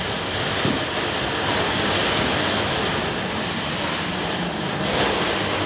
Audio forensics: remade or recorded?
recorded